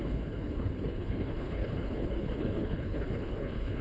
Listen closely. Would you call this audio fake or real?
fake